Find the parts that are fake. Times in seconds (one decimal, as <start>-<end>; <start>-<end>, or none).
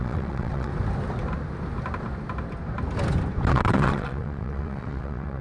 0.0-0.7; 3.5-5.4